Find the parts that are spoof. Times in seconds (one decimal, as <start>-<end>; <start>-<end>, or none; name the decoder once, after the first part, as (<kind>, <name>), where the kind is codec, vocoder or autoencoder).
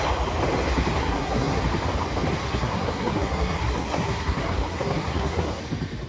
1.0-1.6 (codec, SNAC); 2.4-5.6